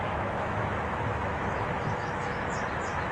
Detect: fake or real fake